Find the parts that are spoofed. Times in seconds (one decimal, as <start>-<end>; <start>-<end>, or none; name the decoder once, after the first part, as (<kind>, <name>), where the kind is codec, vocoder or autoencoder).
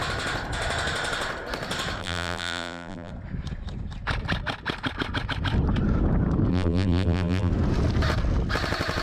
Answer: 2.0-3.1 (vocoder, BigVGAN v2); 6.5-7.5